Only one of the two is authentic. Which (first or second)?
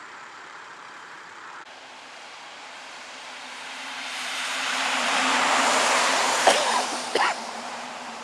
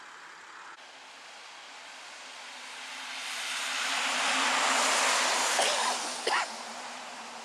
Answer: second